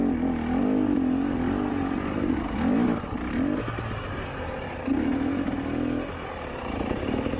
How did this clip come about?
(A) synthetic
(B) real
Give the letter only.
B